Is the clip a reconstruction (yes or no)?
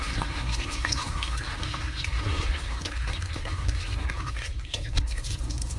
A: yes